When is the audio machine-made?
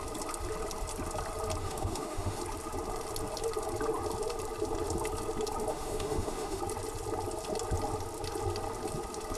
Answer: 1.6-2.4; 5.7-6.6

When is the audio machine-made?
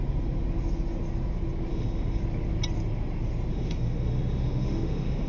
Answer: 1.7-2.2; 3.5-5.3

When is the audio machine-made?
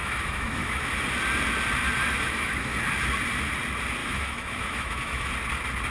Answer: 0.0-0.8; 2.0-2.7; 4.0-5.3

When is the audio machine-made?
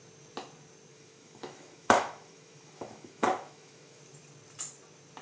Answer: 0.9-4.0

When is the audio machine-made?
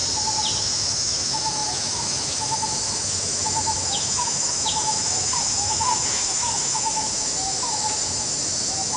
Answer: 0.6-9.0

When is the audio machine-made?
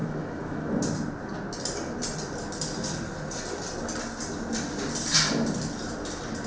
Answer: 0.0-0.8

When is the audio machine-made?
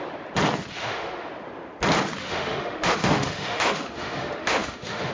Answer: 0.7-1.3; 2.2-5.1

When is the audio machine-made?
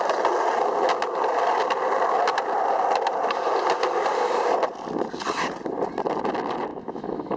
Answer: 6.7-7.4